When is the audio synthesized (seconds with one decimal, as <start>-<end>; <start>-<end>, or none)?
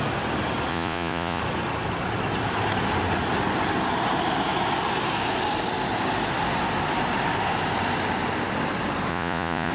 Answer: 0.7-1.4; 9.1-9.7